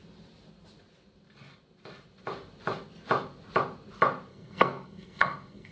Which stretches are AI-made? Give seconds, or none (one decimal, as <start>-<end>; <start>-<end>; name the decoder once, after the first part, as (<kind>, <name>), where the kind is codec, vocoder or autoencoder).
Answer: 4.3-5.7 (codec, SNAC)